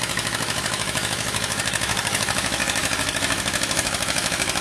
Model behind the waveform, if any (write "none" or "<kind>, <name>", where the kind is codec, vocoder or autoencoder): autoencoder, DAC-VAE